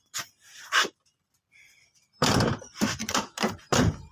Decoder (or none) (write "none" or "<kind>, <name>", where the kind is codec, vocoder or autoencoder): none